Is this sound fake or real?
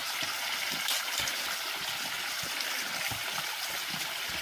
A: real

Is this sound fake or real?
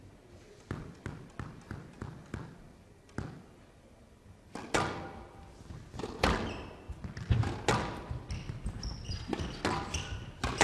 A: real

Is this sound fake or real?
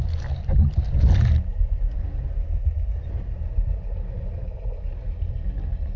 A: real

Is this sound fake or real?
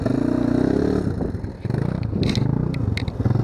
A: real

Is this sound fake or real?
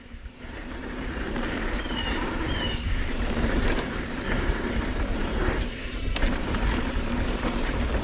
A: fake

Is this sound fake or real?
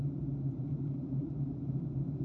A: real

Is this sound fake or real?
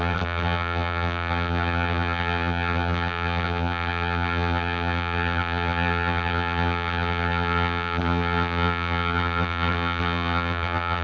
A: fake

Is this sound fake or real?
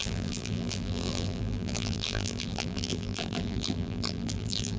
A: fake